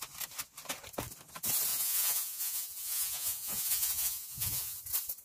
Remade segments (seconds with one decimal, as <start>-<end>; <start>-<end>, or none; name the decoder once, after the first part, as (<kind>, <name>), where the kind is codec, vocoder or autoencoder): 1.7-4.8 (vocoder, Vocos)